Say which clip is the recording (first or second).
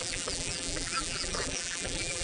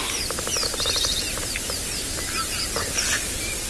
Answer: second